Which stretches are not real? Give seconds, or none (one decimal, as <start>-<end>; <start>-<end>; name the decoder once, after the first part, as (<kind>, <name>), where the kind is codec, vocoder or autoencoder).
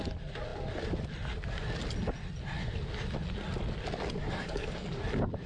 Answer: 4.2-5.0 (codec, DAC)